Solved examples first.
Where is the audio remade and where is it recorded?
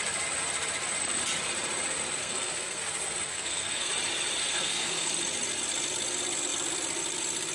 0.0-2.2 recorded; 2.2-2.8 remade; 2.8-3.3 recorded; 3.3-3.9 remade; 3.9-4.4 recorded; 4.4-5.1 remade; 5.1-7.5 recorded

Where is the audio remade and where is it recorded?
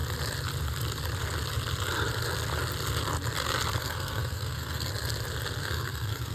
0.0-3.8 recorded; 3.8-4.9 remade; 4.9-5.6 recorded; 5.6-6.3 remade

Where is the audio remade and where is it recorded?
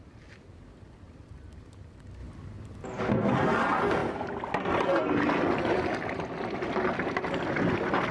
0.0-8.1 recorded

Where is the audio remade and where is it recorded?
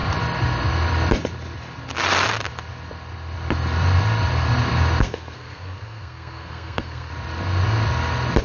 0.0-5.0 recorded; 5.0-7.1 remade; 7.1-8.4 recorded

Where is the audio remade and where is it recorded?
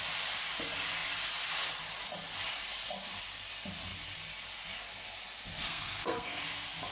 0.0-5.6 recorded; 5.6-6.4 remade; 6.4-6.9 recorded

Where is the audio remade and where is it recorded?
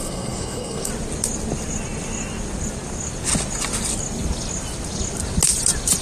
0.0-0.9 remade; 0.9-6.0 recorded